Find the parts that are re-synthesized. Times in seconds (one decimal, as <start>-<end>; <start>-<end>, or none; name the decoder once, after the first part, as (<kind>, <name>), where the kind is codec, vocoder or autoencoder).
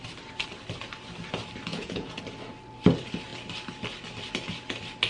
1.7-2.2 (vocoder, Vocos)